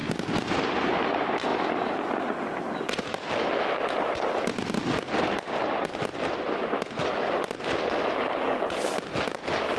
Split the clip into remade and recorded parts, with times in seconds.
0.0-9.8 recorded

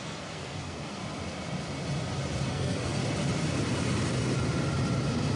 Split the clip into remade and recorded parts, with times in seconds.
0.0-1.0 remade; 1.0-2.5 recorded; 2.5-3.0 remade; 3.0-5.4 recorded

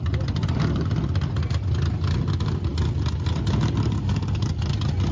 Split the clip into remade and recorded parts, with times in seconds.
0.0-5.1 recorded

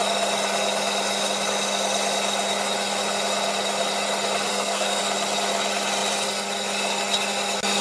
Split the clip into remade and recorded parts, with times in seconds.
0.0-4.5 recorded; 4.5-5.0 remade; 5.0-7.8 recorded